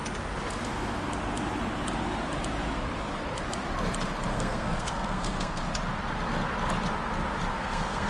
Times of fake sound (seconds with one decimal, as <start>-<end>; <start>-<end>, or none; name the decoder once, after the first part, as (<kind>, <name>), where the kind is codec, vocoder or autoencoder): 4.3-5.6 (codec, SNAC); 7.5-8.1